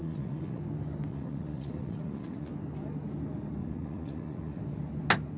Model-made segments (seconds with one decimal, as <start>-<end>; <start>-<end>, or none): 0.0-0.6; 1.1-2.5; 3.6-4.6

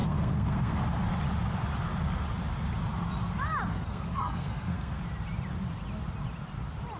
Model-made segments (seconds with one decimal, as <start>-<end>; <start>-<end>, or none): 0.0-0.8; 3.7-5.0

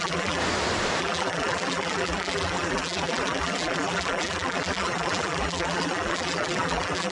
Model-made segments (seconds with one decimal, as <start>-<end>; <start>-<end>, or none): 0.0-0.4; 1.0-7.1

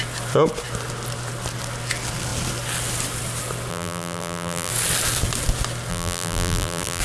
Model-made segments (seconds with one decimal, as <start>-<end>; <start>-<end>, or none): 3.7-4.7; 5.9-7.0

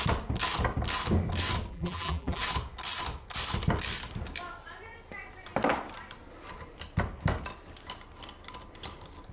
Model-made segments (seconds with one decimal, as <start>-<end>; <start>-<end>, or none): 1.7-2.4

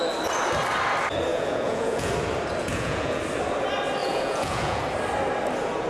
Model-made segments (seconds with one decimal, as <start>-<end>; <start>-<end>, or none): 1.3-2.1; 2.6-3.2; 4.0-4.8

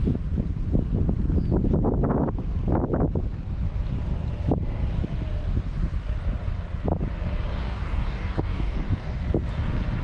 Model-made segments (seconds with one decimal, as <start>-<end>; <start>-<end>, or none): 7.6-9.2

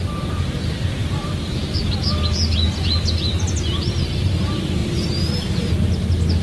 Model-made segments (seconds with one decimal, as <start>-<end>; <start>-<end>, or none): 1.0-1.9; 4.8-5.7